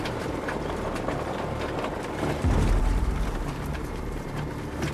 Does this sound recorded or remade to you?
remade